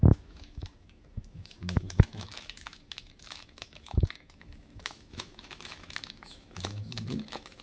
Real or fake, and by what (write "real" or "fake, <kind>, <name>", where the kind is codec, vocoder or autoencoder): fake, autoencoder, DAC-VAE